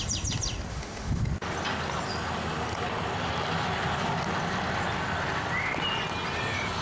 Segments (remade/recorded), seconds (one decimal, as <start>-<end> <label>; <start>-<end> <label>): 0.0-0.7 recorded; 0.7-1.2 remade; 1.2-6.8 recorded